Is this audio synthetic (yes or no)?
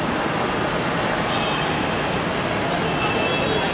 no